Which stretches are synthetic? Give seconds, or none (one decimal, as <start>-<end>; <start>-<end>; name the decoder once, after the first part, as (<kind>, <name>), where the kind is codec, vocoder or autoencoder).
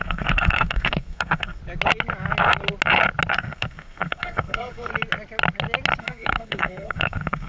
0.0-1.6 (codec, SNAC); 3.3-4.9; 6.0-7.5